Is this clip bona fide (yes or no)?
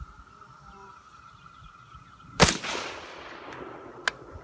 yes